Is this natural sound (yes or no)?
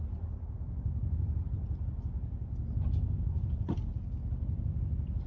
yes